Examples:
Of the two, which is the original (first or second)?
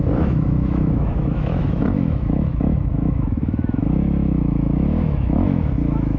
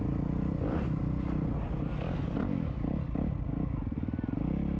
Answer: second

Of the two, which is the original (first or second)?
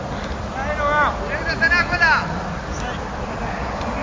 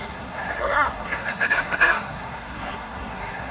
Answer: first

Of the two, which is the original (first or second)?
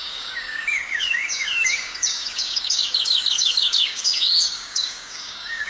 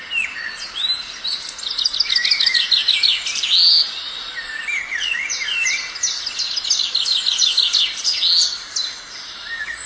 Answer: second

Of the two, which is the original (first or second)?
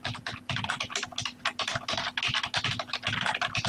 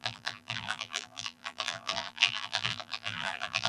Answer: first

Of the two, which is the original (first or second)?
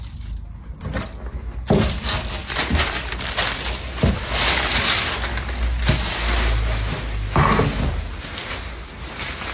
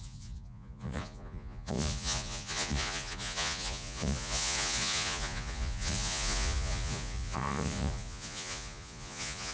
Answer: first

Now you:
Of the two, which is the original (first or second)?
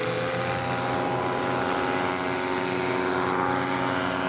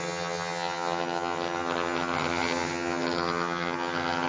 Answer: first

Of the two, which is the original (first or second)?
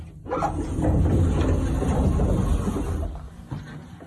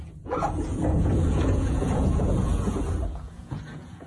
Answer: first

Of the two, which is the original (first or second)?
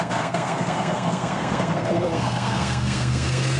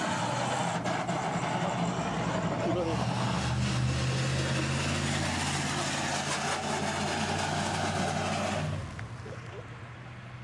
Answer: second